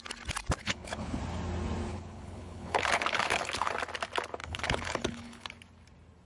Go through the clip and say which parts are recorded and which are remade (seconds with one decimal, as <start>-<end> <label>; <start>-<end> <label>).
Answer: 0.0-0.6 recorded; 0.6-1.2 remade; 1.2-1.9 recorded; 1.9-3.7 remade; 3.7-4.4 recorded; 4.4-5.5 remade; 5.5-6.3 recorded